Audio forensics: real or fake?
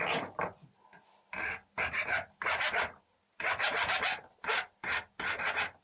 real